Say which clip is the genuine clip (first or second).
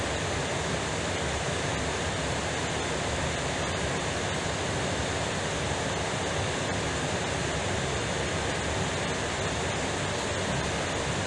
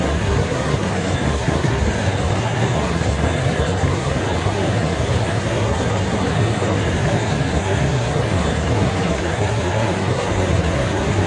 first